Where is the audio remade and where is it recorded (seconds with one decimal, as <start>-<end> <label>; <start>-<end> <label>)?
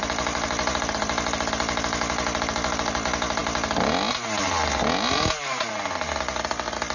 0.0-6.9 recorded